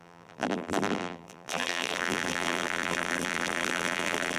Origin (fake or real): fake